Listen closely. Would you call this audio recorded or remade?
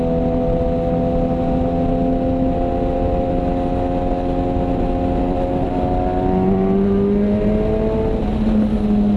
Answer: recorded